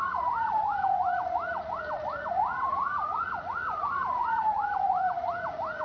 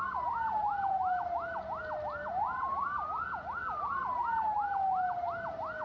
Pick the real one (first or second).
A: second